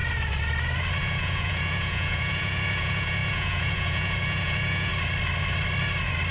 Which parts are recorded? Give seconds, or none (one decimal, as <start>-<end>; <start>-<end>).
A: 0.0-1.0; 4.9-6.3